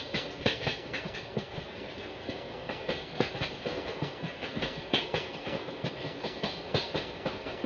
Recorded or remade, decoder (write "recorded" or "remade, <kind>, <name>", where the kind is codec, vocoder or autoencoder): remade, codec, SNAC